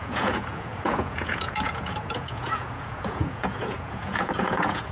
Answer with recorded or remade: remade